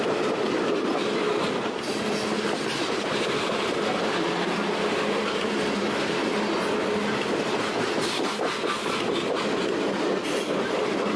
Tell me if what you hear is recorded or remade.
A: recorded